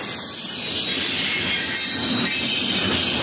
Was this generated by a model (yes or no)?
no